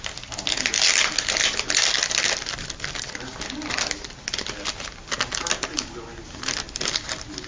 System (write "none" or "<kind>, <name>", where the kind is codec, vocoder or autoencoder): none